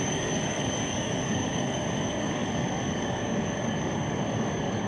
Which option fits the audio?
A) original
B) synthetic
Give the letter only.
B